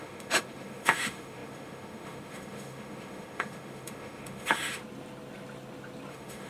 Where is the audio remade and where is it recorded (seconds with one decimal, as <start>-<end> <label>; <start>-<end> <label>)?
0.0-4.8 remade; 4.8-6.1 recorded; 6.1-6.5 remade